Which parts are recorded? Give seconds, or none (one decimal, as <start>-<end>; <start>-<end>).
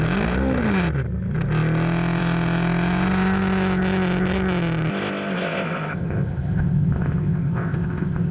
0.0-4.9